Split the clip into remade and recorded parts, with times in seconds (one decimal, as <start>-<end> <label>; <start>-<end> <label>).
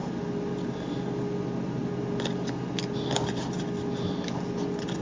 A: 0.0-5.0 recorded